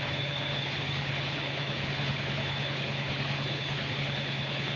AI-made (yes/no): yes